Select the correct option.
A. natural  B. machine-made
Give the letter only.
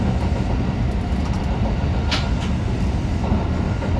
A